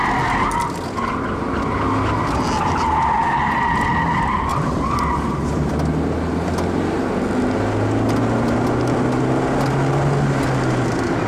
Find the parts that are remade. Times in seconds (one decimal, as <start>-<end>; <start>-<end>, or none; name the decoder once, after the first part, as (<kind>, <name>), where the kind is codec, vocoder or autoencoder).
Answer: 4.5-5.7 (vocoder, BigVGAN v2)